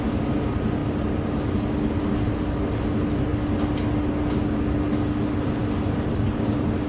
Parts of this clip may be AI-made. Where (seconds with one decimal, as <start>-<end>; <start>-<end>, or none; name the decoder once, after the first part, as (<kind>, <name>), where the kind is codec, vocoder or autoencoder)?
none